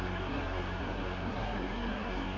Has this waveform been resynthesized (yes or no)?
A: yes